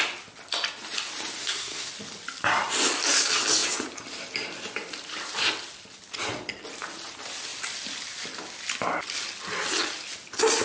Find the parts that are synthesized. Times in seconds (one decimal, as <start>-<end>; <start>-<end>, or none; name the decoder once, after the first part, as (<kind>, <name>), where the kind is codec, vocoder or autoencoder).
1.4-1.9 (codec, SNAC)